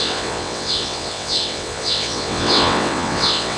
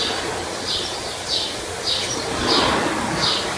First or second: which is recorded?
second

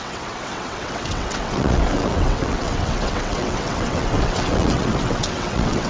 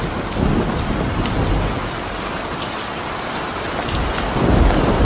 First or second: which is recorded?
second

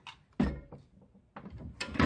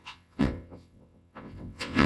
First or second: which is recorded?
first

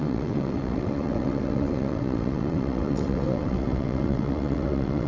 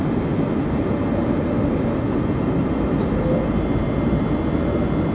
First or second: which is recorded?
second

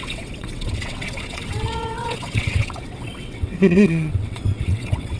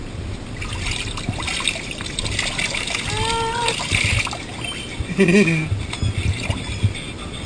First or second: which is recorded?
second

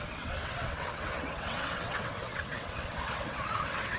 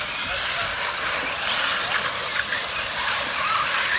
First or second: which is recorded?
second